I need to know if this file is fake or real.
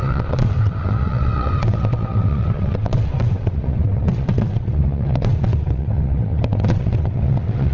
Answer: fake